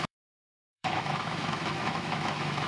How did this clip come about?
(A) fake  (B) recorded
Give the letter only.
A